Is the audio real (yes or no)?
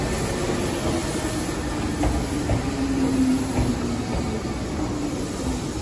yes